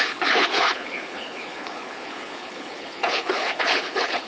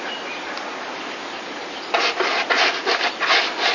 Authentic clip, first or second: second